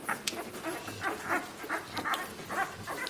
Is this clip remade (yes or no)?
no